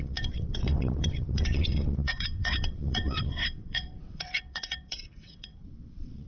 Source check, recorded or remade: remade